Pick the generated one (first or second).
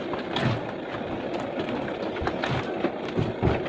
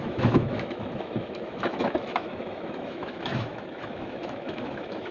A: second